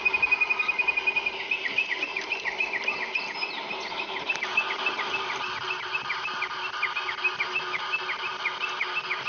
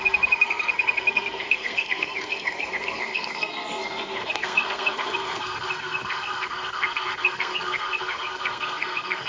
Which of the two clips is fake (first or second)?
second